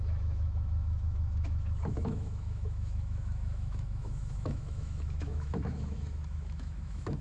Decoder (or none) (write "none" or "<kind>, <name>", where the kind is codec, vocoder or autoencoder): autoencoder, DAC-VAE